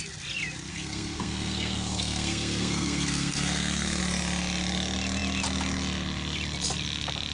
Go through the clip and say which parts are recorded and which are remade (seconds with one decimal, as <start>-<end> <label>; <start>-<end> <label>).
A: 0.0-0.7 recorded; 0.7-4.0 remade; 4.0-7.3 recorded